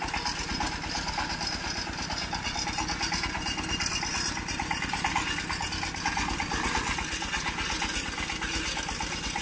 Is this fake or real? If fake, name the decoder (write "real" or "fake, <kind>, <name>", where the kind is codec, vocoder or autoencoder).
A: real